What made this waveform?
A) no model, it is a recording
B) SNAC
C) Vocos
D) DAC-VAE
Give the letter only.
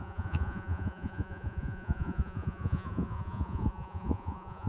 C